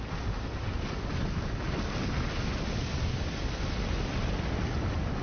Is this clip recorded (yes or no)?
yes